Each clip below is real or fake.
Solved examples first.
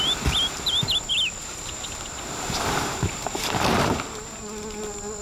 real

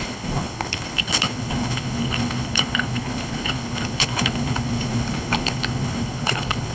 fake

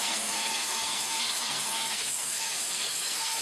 fake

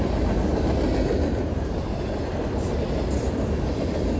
real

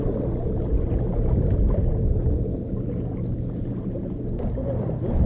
real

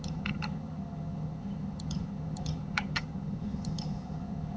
fake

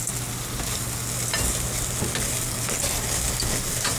real